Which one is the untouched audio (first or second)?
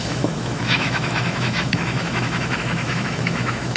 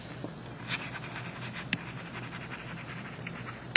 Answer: second